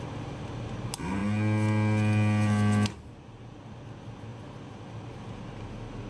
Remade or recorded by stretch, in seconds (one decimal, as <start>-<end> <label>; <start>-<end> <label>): 0.0-6.1 recorded